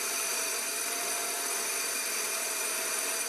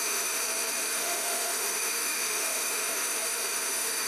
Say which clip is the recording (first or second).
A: first